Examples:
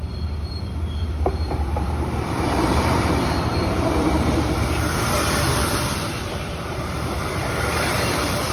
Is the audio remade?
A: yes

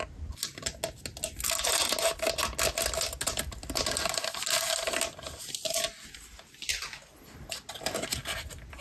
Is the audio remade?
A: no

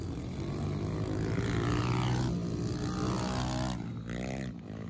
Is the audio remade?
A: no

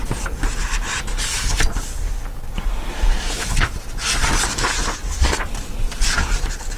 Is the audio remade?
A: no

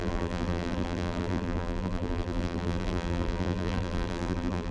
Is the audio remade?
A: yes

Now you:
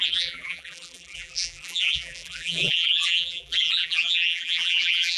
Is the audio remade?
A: yes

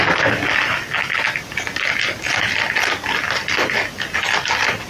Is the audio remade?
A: no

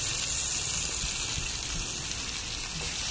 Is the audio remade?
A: no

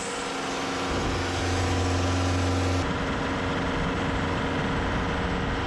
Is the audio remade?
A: no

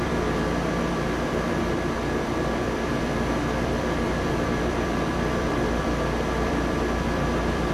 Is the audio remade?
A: yes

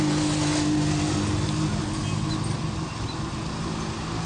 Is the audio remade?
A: no